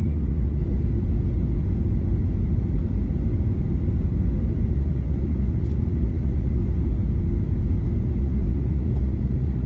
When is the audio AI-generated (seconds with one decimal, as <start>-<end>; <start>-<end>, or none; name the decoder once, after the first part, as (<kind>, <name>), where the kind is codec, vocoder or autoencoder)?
0.0-0.6 (vocoder, Vocos); 4.7-6.6; 8.0-9.7